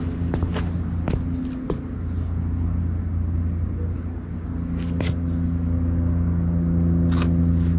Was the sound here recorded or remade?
recorded